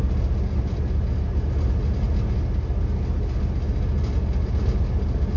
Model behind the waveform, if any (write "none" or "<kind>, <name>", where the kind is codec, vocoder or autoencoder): none